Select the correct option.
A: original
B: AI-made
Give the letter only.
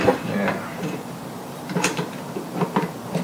B